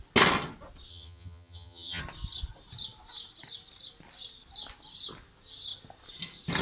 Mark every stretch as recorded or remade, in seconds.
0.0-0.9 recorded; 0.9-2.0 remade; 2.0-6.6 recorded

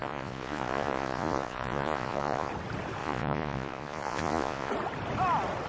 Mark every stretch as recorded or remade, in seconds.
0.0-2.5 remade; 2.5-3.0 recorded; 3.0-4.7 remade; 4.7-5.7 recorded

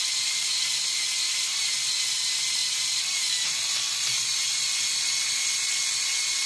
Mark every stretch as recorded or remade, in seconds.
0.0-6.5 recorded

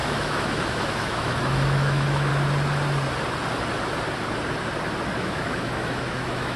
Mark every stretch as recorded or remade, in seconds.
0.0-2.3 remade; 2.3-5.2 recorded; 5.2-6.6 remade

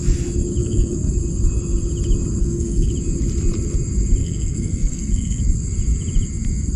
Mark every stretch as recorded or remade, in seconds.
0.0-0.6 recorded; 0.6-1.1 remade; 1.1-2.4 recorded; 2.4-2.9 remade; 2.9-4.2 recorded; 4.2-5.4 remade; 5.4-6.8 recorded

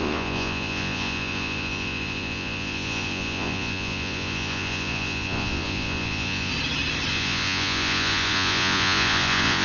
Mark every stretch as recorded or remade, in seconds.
0.0-6.5 remade; 6.5-7.1 recorded; 7.1-9.6 remade

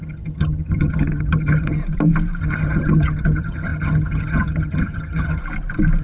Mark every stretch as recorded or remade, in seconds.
0.0-1.8 remade; 1.8-2.4 recorded; 2.4-5.4 remade; 5.4-6.0 recorded